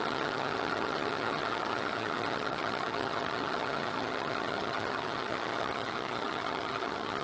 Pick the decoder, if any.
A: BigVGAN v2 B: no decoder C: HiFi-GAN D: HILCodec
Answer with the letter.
C